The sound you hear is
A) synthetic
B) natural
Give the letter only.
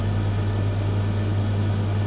B